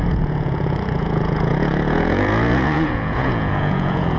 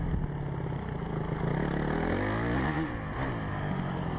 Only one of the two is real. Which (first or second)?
second